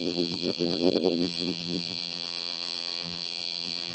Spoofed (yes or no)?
yes